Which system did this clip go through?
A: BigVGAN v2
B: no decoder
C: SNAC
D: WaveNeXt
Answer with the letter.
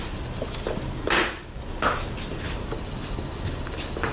B